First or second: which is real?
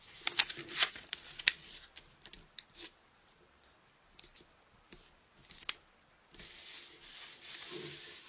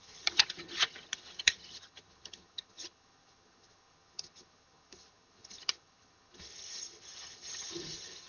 first